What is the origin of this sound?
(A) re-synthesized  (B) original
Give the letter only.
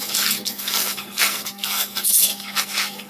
A